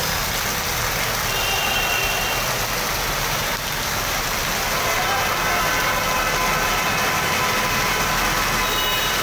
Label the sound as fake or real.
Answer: real